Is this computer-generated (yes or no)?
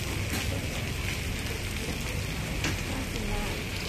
no